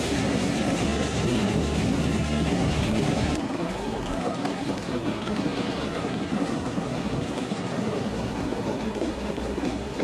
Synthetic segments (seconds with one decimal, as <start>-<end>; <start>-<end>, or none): 0.0-10.0